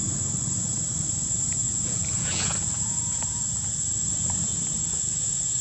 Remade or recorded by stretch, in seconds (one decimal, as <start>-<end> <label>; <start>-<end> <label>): 0.0-1.7 recorded; 1.7-3.0 remade; 3.0-5.6 recorded